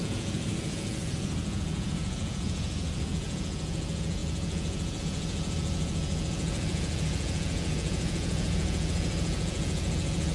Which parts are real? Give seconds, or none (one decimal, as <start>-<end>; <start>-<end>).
none